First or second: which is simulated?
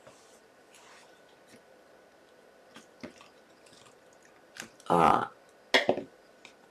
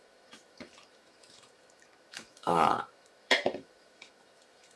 second